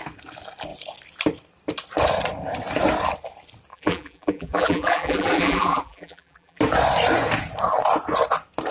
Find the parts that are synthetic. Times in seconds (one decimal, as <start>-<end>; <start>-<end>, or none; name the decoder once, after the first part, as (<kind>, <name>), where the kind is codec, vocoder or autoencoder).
3.7-6.6 (vocoder, BigVGAN v2)

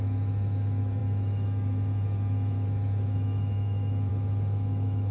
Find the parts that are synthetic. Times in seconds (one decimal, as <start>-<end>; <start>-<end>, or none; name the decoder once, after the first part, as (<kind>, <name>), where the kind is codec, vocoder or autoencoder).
0.0-5.1 (autoencoder, DAC-VAE)

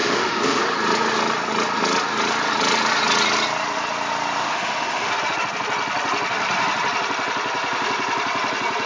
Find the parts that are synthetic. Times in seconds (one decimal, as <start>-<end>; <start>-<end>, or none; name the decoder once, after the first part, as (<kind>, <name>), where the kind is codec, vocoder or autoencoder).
0.0-0.6 (autoencoder, DAC-VAE); 4.4-5.1